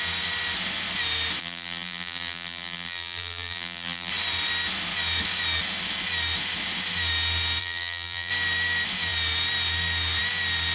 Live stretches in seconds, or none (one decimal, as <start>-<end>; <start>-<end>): 0.0-1.4; 4.1-7.6; 8.3-10.7